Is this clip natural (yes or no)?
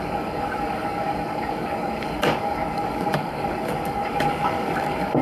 no